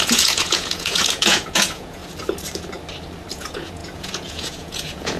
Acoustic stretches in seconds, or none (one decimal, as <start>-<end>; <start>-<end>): 2.0-3.3